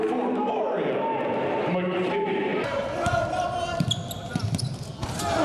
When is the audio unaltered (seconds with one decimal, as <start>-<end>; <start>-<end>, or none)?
0.0-2.5; 4.7-5.4